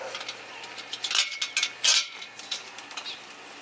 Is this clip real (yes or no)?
yes